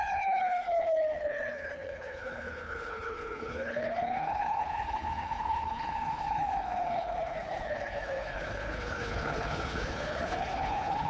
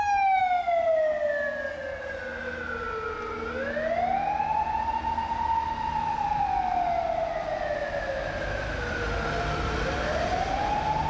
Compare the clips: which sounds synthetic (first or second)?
first